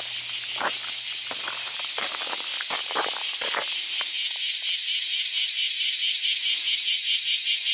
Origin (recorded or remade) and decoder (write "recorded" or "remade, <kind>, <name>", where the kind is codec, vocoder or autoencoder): recorded